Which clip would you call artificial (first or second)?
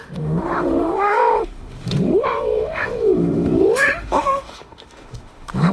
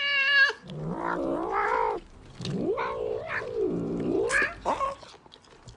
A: first